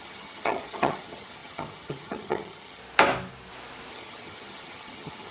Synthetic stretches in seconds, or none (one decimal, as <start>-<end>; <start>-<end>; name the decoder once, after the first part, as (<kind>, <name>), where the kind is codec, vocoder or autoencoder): 0.0-2.8 (vocoder, HiFi-GAN); 3.9-5.3